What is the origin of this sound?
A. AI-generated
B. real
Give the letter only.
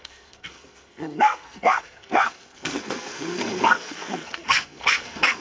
A